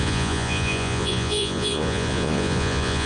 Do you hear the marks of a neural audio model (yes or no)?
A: yes